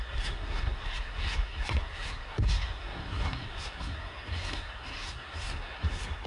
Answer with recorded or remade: remade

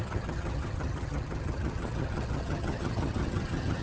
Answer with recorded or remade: remade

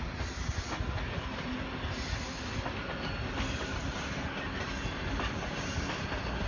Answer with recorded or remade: recorded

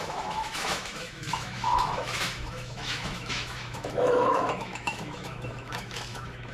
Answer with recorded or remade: remade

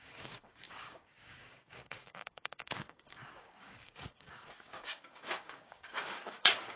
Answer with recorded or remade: remade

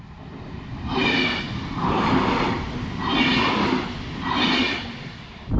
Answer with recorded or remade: recorded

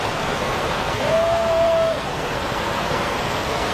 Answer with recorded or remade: remade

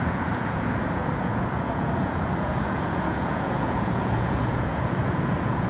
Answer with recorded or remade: remade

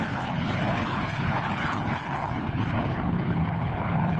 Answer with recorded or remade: remade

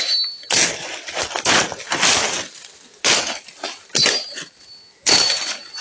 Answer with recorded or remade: recorded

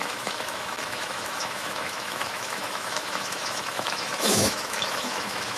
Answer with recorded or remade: remade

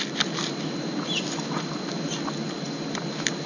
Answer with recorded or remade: recorded